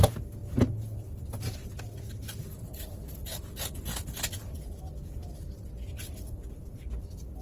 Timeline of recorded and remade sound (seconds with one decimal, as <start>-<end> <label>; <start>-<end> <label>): 0.0-7.4 recorded